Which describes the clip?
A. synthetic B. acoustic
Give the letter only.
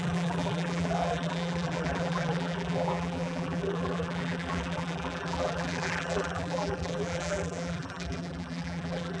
A